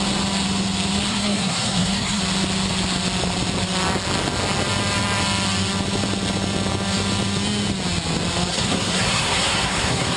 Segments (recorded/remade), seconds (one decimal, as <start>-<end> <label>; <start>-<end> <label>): 0.0-1.1 recorded; 1.1-2.2 remade; 2.2-8.5 recorded; 8.5-10.2 remade